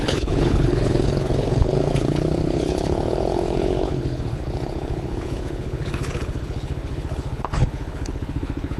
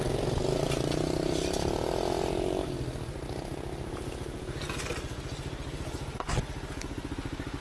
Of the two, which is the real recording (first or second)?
second